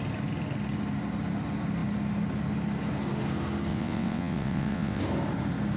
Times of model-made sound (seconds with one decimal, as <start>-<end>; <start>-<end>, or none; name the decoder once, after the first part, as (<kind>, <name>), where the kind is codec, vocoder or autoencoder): 3.7-5.0 (vocoder, WaveNeXt)